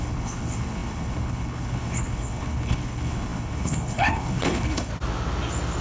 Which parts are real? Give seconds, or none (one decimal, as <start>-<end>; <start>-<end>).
4.9-5.8